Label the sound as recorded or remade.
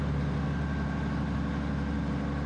recorded